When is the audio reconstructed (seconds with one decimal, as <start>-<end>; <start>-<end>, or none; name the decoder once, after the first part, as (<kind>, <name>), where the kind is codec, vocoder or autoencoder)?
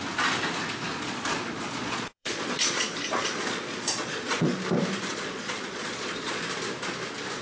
0.9-4.6 (vocoder, Vocos); 5.1-6.4